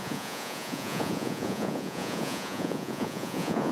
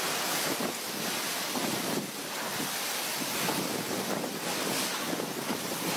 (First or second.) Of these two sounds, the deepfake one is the first